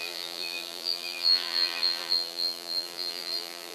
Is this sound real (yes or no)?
no